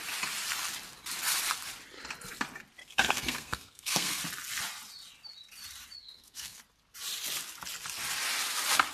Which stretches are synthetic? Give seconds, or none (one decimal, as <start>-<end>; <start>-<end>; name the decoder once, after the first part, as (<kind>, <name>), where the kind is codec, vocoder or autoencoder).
2.8-4.2 (codec, SNAC); 6.0-6.6